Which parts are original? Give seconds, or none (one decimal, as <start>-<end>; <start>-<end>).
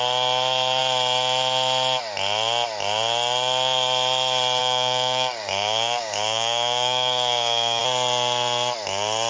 0.0-4.6; 7.8-9.3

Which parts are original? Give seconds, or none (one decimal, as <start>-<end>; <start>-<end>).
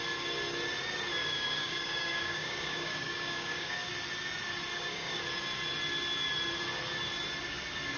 0.0-1.2; 3.9-4.7; 5.2-8.0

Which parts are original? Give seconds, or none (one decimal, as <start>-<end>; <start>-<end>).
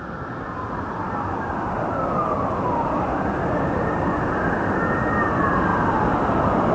0.0-6.7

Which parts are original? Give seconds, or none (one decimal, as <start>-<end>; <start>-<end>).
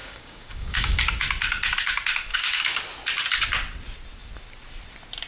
1.0-2.3; 2.8-5.3